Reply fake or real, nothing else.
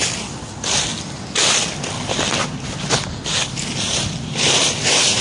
real